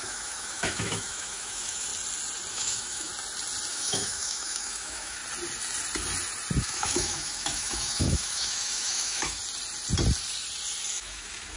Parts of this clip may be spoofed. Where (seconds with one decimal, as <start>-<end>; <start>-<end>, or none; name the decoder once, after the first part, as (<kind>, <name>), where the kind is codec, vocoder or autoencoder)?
0.0-1.9 (autoencoder, DAC-VAE); 2.5-3.1; 3.7-5.2; 6.6-9.4; 10.9-11.6